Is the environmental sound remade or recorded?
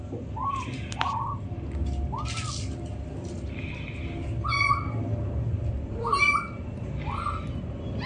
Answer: recorded